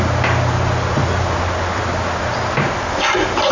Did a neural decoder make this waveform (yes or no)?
no